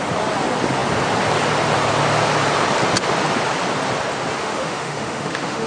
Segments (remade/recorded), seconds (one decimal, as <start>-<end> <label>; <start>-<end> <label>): 0.0-4.4 recorded; 4.4-5.7 remade